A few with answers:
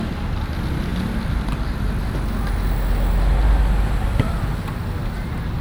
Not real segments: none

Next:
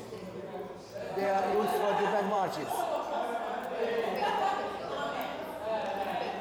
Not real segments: 0.0-1.7 (vocoder, BigVGAN v2); 2.2-6.4

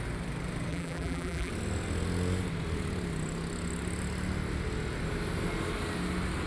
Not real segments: 0.7-1.5 (vocoder, BigVGAN v2)

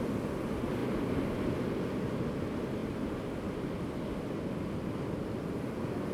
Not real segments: none